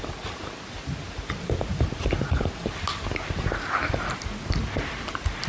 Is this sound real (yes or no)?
yes